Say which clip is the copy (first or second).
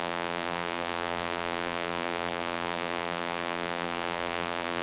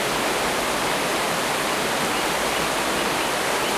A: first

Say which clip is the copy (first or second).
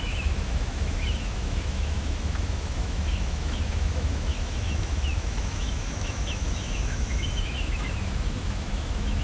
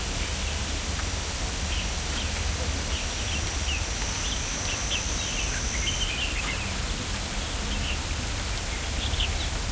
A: first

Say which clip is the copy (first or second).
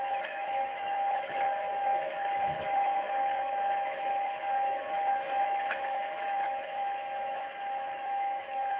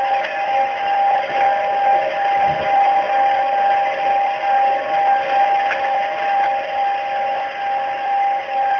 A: first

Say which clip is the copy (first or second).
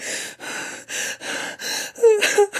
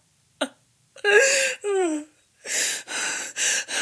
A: second